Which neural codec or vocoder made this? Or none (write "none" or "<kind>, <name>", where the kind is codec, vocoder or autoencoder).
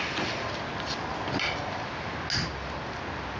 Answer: none